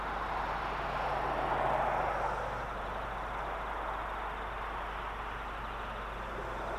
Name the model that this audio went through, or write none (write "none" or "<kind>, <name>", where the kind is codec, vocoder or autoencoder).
none